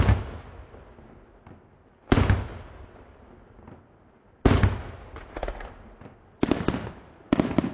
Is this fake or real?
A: real